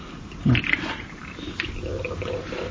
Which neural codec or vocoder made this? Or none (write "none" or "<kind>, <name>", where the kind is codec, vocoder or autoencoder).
none